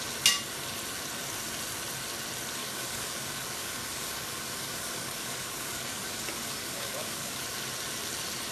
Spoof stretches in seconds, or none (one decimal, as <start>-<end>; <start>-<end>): 2.6-7.4